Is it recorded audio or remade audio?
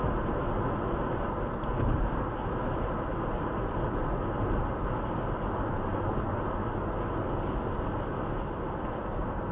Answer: recorded